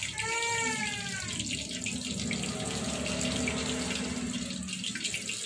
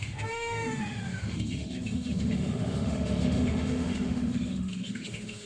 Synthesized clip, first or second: second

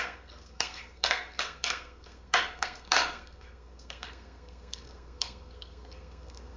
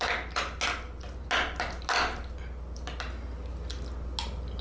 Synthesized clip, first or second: first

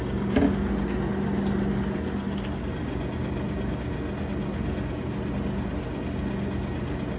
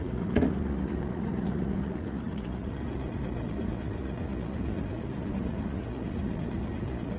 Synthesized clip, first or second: second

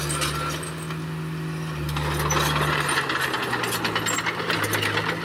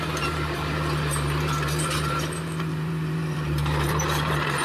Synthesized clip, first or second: second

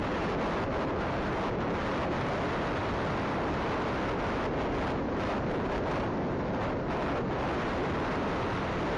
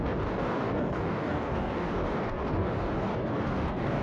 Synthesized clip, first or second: second